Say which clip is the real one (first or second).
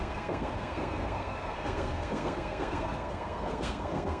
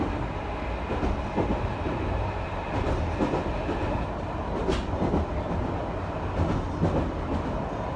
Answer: second